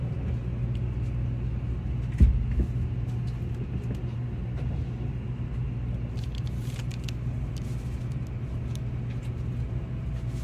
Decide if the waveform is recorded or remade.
recorded